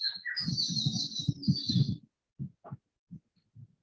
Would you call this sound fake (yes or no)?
no